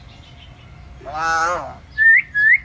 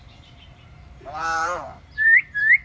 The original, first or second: first